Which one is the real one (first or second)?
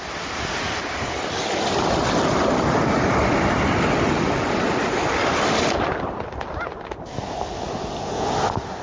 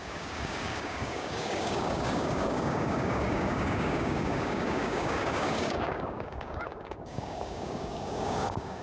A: first